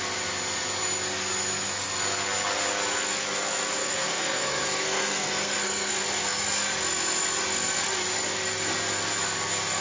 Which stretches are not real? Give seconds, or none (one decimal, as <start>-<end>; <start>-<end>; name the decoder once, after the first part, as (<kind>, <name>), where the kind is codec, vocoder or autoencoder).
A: 3.8-5.9 (codec, SNAC)